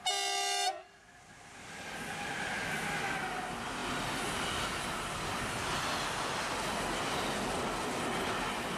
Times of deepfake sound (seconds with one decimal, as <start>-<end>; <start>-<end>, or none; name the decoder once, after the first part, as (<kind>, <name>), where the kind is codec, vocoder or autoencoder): none